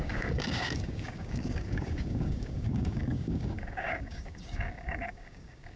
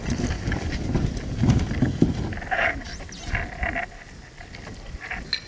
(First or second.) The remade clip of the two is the first